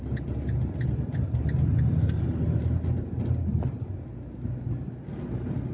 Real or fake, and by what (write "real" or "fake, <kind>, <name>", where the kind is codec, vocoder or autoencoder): real